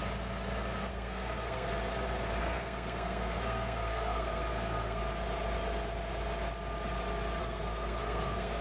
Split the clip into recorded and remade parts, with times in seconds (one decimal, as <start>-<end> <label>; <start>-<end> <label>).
0.0-0.9 recorded; 0.9-1.7 remade; 1.7-2.4 recorded; 2.4-5.0 remade; 5.0-7.4 recorded; 7.4-8.6 remade